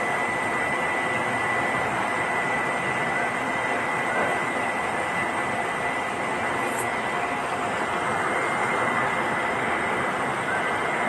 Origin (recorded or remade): remade